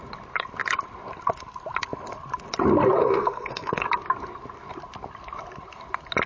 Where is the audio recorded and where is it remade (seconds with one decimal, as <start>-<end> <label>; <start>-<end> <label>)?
0.0-3.0 recorded; 3.0-3.8 remade; 3.8-6.3 recorded